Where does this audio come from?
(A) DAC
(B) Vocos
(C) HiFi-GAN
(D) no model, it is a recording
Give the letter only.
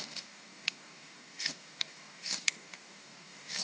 A